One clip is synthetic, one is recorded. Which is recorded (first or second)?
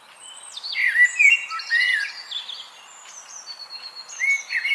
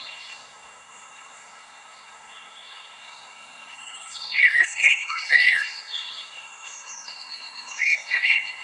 first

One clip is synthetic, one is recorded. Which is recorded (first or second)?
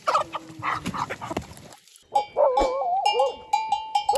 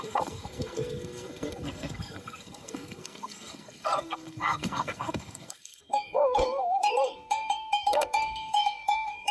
first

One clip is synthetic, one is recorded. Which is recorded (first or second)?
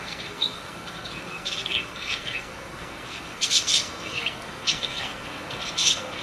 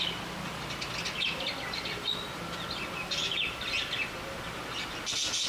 second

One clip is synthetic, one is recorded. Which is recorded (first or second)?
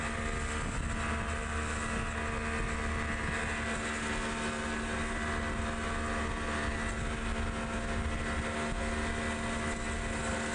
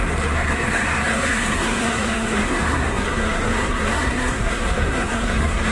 first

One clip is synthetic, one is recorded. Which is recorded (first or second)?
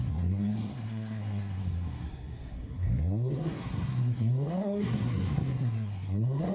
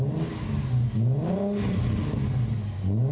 second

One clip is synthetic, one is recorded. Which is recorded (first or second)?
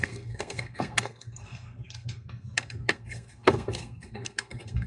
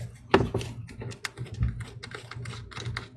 second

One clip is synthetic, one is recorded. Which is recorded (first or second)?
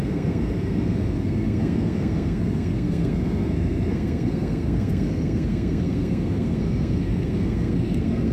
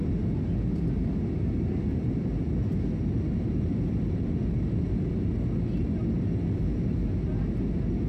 second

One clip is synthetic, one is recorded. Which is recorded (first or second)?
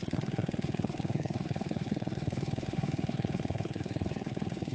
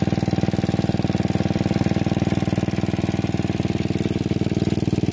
second